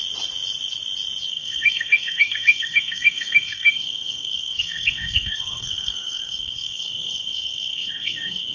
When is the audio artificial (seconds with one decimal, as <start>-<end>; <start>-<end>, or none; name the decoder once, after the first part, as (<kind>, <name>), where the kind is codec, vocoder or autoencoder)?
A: 1.3-8.5 (codec, SNAC)